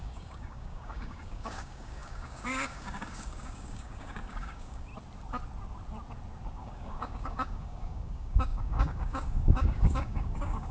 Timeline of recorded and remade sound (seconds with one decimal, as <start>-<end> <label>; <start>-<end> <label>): 0.0-4.9 remade; 4.9-6.5 recorded; 6.5-10.7 remade